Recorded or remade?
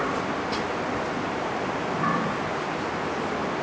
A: recorded